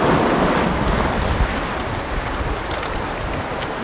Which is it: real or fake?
real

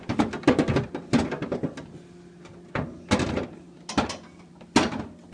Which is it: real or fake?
real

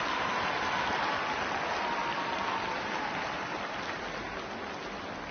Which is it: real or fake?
real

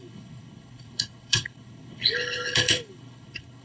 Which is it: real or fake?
fake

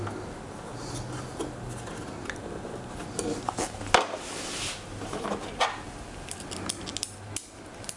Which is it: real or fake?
real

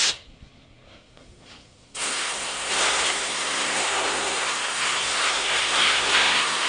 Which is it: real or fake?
fake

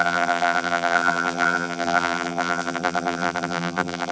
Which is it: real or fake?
fake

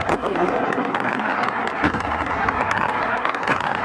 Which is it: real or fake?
fake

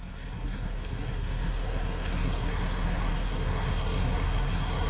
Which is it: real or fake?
fake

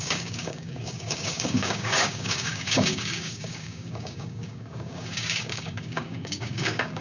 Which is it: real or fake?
fake